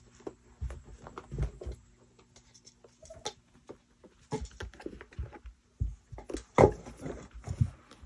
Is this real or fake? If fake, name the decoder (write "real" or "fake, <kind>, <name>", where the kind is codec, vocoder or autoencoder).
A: real